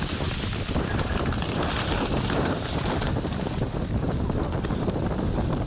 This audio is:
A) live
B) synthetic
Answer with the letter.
A